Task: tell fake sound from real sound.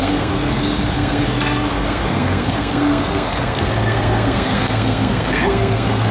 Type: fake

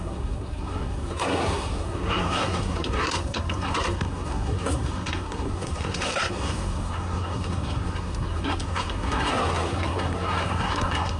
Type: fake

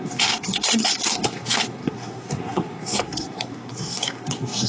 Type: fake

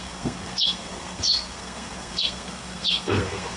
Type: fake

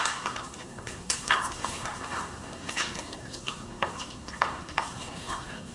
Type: fake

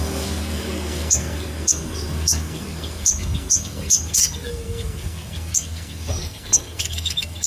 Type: fake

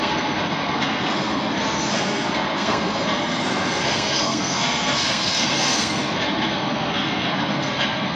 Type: fake